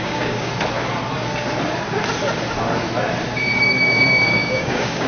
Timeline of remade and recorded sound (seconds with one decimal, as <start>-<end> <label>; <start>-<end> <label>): 0.0-0.5 remade; 0.5-3.6 recorded; 3.6-5.1 remade